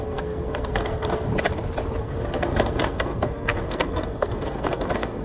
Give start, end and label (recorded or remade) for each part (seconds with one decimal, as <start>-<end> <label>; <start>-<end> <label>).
0.0-1.3 remade; 1.3-2.0 recorded; 2.0-5.2 remade